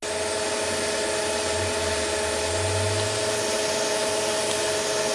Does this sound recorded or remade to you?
recorded